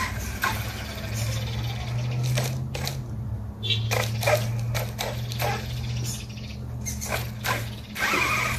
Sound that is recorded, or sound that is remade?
recorded